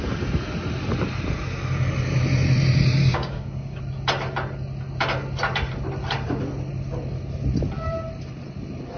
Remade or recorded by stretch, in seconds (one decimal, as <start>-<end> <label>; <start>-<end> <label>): 0.0-3.0 recorded; 3.0-3.8 remade; 3.8-9.0 recorded

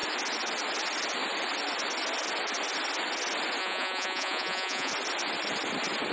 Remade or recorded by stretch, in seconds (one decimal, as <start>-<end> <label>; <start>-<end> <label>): 0.0-3.6 recorded; 3.6-4.9 remade; 4.9-6.1 recorded

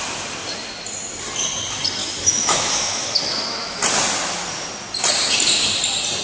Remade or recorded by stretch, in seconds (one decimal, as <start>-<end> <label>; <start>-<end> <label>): 0.0-2.0 recorded; 2.0-3.8 remade; 3.8-6.2 recorded

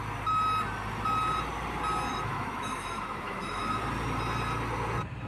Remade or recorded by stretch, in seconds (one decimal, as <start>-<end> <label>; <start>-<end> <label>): 0.0-2.1 recorded; 2.1-3.6 remade; 3.6-5.3 recorded

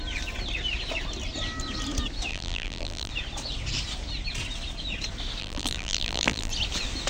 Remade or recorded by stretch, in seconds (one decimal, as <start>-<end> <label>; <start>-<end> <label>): 0.0-2.3 recorded; 2.3-3.1 remade; 3.1-5.4 recorded; 5.4-6.5 remade; 6.5-7.1 recorded

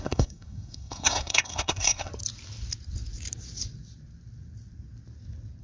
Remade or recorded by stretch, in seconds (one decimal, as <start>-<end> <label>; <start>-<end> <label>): 0.0-2.1 remade; 2.1-5.6 recorded